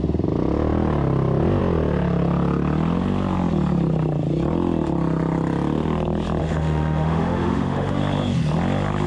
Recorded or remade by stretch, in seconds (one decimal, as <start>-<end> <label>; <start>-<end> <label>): 0.0-6.4 recorded; 6.4-8.0 remade; 8.0-9.1 recorded